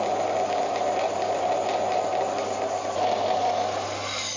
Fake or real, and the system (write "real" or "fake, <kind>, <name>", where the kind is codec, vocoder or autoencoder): real